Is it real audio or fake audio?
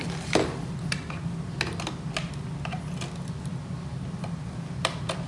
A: real